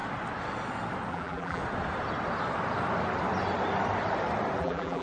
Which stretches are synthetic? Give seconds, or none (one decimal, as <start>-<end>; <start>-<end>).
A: 1.1-1.6; 4.6-5.0